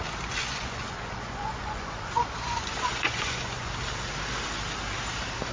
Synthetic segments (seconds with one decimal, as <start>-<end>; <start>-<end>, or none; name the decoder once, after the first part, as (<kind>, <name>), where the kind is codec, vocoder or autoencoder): 0.4-3.7 (vocoder, Vocos)